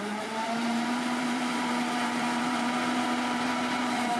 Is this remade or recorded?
remade